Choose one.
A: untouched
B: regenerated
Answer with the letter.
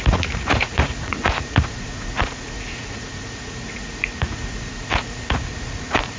B